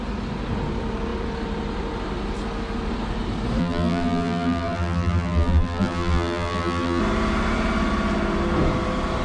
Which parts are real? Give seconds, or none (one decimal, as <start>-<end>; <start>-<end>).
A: 0.0-3.6; 7.0-9.2